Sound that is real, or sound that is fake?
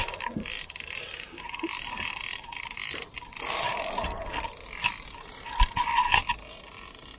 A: real